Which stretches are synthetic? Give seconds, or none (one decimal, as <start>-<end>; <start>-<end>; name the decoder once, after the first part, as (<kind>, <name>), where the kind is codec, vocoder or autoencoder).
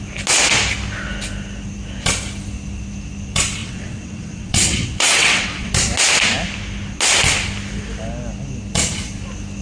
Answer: 3.6-5.7 (vocoder, WaveNeXt)